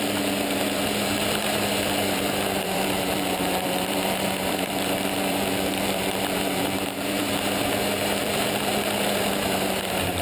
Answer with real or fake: fake